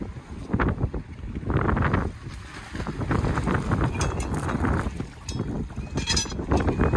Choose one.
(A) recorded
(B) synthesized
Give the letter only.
A